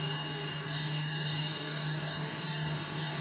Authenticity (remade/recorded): remade